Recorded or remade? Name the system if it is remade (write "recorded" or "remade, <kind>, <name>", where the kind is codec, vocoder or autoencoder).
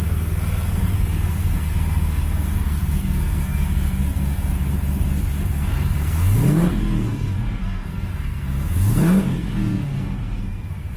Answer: remade, codec, SNAC